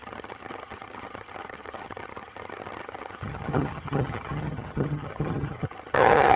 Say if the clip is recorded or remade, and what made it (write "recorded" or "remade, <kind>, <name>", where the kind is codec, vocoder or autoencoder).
remade, vocoder, HiFi-GAN